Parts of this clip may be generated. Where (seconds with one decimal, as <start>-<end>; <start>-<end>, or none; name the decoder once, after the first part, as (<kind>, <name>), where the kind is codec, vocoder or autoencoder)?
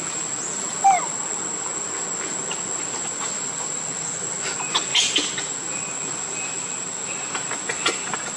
none